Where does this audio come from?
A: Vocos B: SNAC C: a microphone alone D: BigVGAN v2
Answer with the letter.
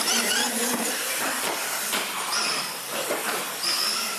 C